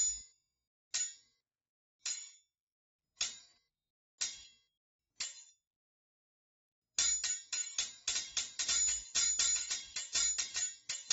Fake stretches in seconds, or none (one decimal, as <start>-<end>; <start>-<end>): none